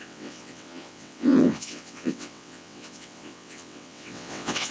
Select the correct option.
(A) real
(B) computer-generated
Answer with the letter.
B